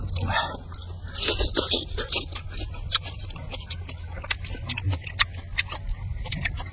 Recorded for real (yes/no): yes